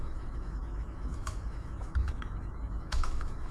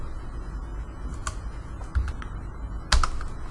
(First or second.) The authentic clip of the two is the second